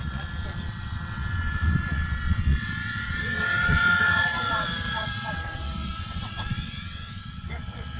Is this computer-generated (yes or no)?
yes